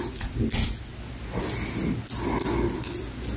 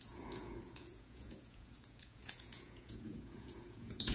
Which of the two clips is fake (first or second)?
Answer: second